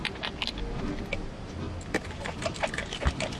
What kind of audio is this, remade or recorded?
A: remade